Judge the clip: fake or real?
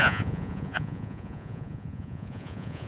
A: fake